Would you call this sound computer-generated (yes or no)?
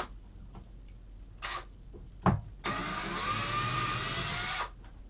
no